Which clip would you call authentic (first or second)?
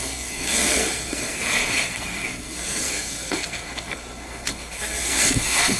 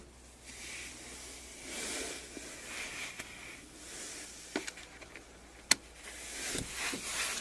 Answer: second